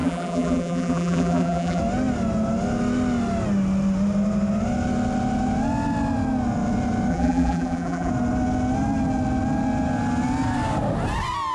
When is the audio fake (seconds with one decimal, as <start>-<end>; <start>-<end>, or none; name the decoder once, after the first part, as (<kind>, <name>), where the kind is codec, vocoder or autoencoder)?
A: 0.0-1.8 (vocoder, BigVGAN v2); 7.1-8.1